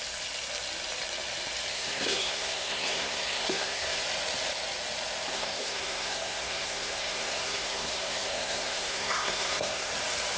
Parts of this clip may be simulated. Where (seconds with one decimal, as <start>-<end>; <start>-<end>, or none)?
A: 1.7-4.0; 5.3-9.9